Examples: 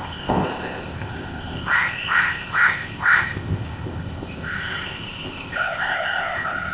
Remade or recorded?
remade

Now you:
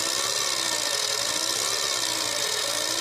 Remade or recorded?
recorded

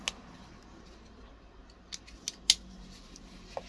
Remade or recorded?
recorded